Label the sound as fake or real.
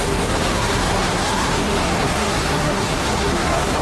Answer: fake